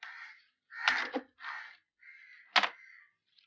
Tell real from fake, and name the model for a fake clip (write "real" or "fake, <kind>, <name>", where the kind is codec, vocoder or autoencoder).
real